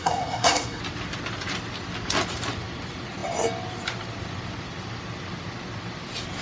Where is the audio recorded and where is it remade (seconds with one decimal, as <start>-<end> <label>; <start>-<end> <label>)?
0.0-0.8 remade; 0.8-6.4 recorded